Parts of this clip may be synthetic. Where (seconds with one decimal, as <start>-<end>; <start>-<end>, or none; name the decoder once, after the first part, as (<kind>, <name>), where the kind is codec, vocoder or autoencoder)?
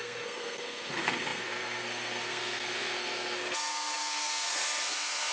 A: 0.0-5.3 (codec, SNAC)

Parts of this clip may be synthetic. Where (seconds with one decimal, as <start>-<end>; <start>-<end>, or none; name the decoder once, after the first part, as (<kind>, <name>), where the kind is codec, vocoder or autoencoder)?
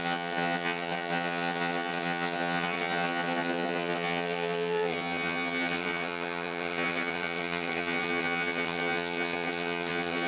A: 0.0-10.3 (vocoder, HiFi-GAN)